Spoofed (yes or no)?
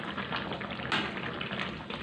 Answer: no